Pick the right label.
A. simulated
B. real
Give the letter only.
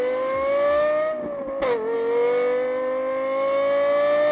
B